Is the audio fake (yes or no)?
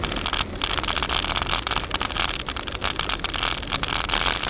no